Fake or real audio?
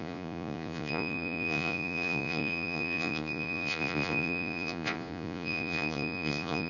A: fake